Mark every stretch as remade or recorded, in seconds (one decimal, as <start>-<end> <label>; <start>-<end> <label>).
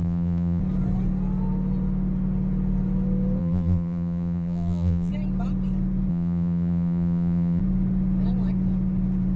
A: 0.0-0.6 remade; 0.6-3.4 recorded; 3.4-5.1 remade; 5.1-6.1 recorded; 6.1-7.6 remade; 7.6-9.4 recorded